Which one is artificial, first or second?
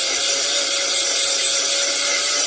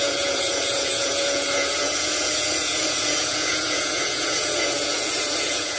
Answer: second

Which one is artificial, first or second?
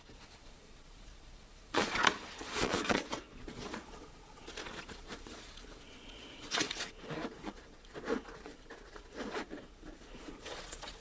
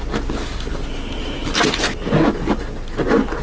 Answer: first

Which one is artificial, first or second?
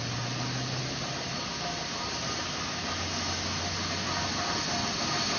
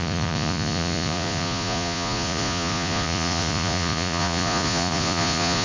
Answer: second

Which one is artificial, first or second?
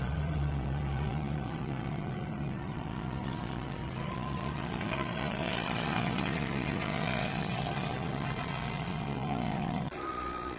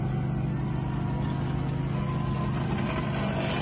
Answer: first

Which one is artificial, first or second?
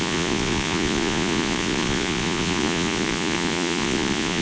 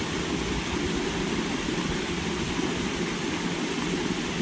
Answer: first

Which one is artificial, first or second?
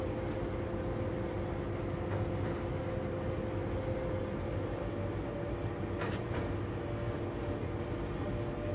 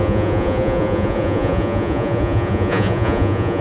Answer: second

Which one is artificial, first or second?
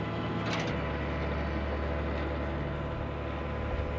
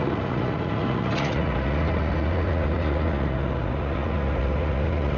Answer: second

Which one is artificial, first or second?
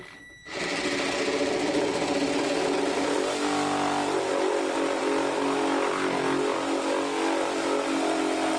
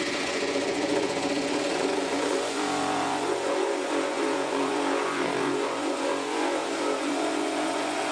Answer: second